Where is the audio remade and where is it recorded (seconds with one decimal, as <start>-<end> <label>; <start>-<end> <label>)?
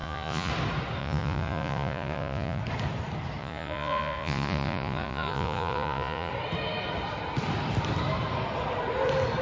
0.0-0.5 remade; 0.5-1.0 recorded; 1.0-2.6 remade; 2.6-3.4 recorded; 3.4-6.3 remade; 6.3-9.4 recorded